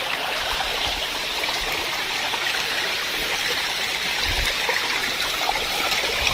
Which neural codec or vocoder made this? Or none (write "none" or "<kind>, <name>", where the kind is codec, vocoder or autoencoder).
none